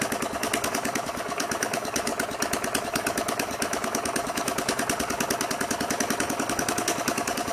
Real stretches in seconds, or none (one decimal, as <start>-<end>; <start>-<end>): 2.1-2.8